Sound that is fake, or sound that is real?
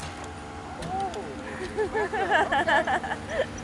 real